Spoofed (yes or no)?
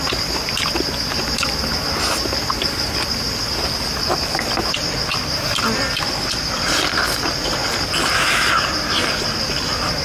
no